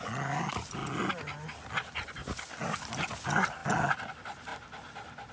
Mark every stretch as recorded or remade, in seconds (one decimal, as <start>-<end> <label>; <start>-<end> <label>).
0.0-5.3 recorded